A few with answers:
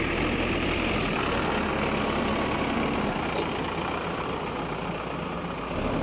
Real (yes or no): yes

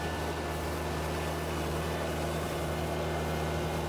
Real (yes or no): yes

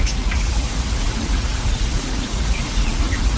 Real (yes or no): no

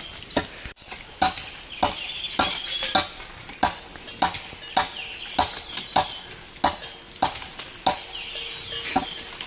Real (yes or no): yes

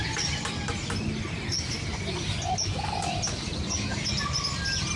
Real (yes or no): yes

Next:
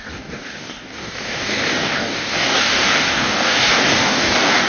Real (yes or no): no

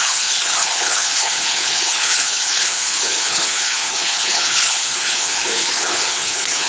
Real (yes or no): no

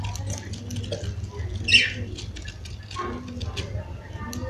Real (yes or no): yes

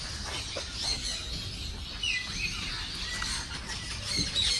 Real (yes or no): yes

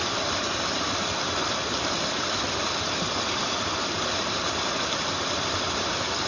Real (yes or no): yes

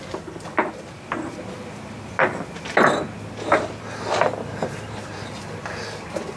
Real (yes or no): yes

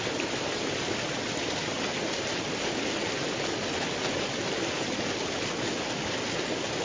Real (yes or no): yes